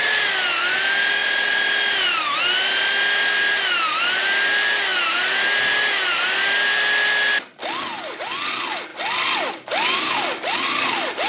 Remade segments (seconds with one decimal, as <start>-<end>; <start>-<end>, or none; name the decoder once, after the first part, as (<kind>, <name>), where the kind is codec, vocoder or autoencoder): none